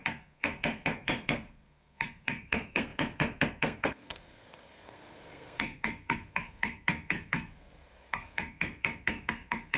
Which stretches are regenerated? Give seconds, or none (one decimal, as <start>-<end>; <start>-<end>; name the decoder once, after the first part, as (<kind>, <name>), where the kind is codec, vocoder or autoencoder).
0.0-9.8 (codec, SNAC)

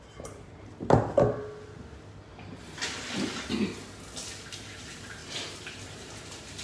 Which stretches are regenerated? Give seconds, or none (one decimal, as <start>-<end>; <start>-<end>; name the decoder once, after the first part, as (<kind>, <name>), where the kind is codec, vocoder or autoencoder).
0.0-0.7 (vocoder, BigVGAN v2); 4.7-6.6

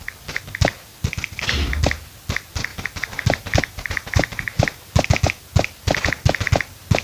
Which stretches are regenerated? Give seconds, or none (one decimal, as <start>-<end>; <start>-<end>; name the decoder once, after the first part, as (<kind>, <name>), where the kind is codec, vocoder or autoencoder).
2.7-4.9 (vocoder, BigVGAN v2)

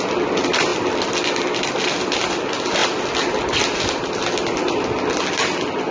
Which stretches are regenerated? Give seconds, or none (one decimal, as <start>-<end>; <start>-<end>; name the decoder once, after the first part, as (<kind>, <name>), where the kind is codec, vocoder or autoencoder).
none

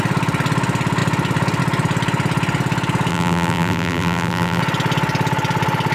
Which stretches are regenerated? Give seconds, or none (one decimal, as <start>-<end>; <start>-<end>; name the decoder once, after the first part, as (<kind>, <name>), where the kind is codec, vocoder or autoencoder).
3.1-4.6 (vocoder, BigVGAN v2)

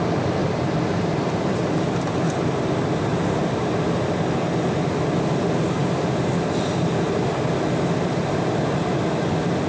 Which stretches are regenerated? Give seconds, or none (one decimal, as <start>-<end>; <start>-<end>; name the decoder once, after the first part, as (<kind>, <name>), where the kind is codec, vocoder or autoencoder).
0.4-2.3 (vocoder, BigVGAN v2); 3.1-3.7